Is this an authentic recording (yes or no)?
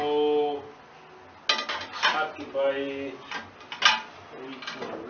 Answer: yes